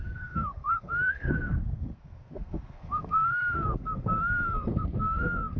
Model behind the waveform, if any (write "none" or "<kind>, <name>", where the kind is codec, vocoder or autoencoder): codec, SNAC